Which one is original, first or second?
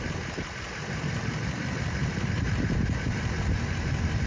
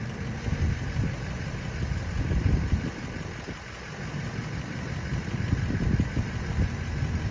second